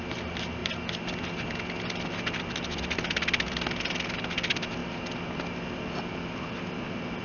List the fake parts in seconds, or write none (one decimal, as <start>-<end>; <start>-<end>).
none